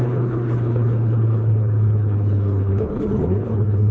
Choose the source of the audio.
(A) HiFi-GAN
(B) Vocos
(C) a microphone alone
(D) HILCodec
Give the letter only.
D